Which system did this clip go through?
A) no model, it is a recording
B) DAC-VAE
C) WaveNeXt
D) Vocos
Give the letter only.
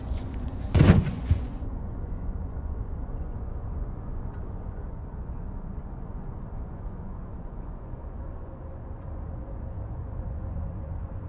D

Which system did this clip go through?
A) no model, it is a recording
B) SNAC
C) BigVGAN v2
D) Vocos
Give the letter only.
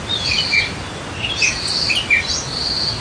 A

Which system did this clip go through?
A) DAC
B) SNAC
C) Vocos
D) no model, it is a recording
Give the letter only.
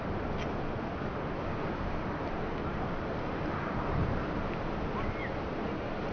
D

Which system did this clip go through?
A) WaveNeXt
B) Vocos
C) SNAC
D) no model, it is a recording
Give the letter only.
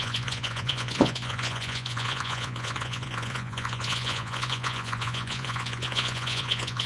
B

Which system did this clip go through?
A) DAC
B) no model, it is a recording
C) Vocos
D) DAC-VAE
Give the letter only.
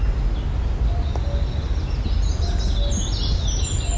B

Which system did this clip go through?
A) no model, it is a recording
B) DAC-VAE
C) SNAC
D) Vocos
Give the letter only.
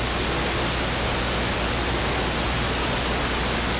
A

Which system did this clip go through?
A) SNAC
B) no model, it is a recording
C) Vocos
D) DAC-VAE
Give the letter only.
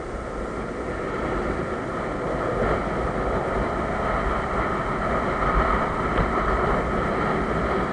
B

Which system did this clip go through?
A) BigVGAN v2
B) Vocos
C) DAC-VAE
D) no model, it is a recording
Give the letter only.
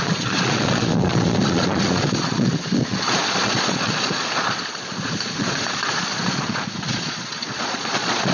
B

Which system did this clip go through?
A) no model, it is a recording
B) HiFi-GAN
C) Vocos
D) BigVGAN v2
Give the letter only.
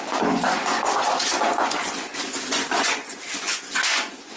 C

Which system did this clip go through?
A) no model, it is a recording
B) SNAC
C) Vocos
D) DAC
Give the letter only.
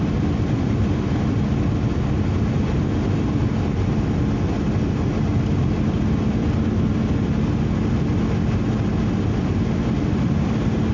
A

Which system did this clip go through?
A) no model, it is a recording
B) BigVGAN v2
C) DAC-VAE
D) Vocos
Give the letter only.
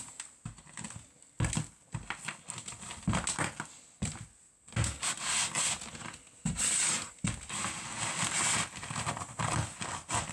A